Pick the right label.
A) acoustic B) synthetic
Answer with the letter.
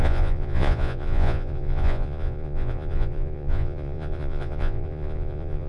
B